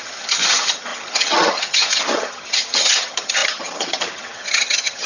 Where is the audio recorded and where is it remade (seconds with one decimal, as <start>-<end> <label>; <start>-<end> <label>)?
0.0-5.1 remade